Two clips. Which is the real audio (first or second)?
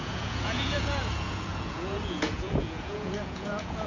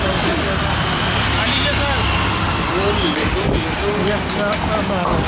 second